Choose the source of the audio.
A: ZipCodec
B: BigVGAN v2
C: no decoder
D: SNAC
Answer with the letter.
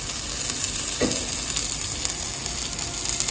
C